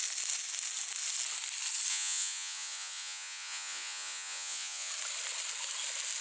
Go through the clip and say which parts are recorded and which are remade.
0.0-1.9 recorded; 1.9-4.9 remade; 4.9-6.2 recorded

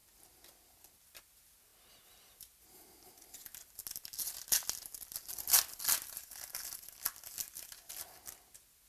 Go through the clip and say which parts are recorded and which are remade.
0.0-8.9 recorded

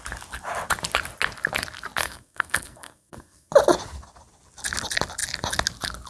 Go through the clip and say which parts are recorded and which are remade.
0.0-2.0 recorded; 2.0-3.5 remade; 3.5-6.1 recorded

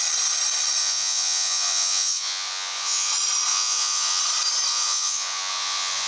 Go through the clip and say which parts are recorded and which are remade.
0.0-0.8 recorded; 0.8-3.1 remade; 3.1-3.5 recorded; 3.5-4.2 remade; 4.2-4.7 recorded; 4.7-6.1 remade

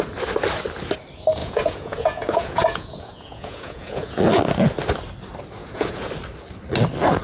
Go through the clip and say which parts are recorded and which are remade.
0.0-1.4 recorded; 1.4-4.2 remade; 4.2-5.6 recorded; 5.6-6.1 remade; 6.1-7.2 recorded

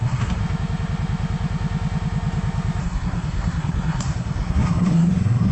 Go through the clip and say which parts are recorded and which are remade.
0.0-0.4 remade; 0.4-2.8 recorded; 2.8-5.5 remade